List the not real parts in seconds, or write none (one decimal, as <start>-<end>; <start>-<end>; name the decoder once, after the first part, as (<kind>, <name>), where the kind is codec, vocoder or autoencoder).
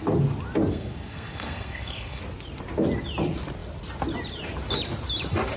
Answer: 0.7-2.2 (codec, SNAC)